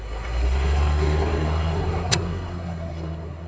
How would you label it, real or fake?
fake